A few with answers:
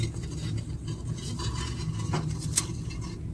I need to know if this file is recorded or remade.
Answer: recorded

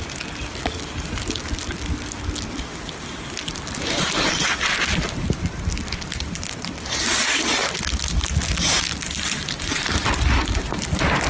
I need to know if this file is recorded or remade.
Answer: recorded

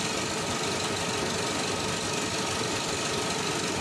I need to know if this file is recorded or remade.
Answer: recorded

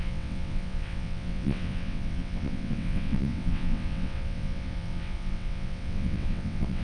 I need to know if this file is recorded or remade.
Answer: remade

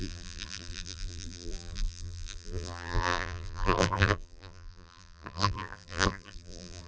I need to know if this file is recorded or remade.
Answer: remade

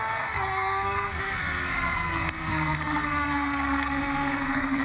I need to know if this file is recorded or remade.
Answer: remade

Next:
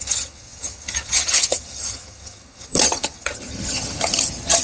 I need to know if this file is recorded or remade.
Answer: remade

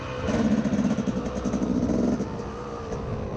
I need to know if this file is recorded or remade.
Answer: recorded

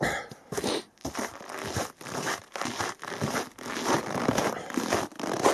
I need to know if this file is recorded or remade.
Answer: recorded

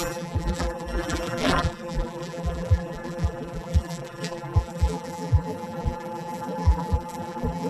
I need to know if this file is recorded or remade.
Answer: remade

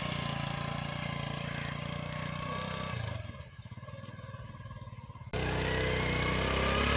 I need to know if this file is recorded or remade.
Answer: recorded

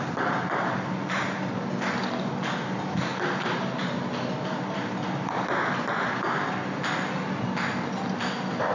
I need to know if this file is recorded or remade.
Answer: recorded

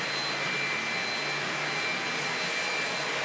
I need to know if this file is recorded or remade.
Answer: recorded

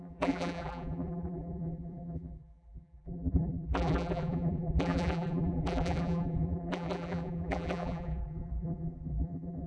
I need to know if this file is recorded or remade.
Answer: remade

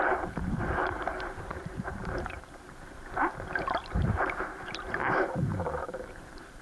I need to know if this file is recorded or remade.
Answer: remade